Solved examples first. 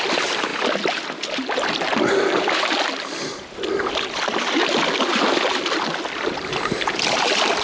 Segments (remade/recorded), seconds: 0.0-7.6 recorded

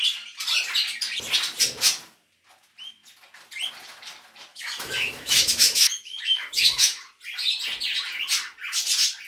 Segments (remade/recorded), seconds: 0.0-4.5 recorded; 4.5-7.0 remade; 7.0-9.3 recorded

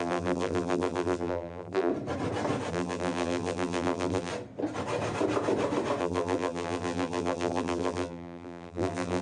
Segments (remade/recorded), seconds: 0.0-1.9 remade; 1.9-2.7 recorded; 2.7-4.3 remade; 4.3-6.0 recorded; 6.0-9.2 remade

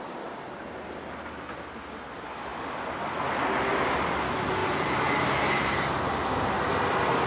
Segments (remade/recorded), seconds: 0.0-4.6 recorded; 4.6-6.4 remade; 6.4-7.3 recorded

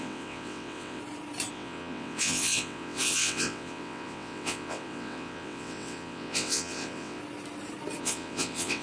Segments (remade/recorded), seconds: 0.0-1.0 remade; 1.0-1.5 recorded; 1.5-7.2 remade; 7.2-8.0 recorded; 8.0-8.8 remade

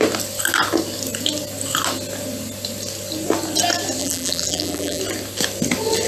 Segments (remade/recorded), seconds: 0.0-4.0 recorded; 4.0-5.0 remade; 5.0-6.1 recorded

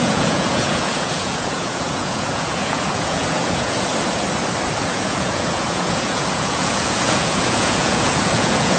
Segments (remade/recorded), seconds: 0.0-3.9 remade; 3.9-4.8 recorded; 4.8-8.8 remade